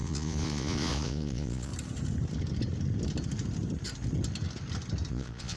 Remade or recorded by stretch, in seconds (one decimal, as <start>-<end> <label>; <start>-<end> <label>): 0.0-1.7 remade; 1.7-5.1 recorded; 5.1-5.6 remade